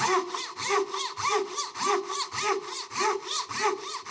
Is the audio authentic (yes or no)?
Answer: no